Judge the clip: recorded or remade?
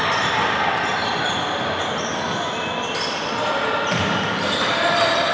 recorded